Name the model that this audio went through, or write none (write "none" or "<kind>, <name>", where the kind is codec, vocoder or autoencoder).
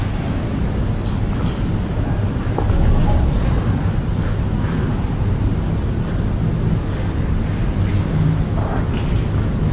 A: none